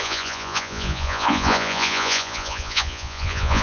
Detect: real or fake fake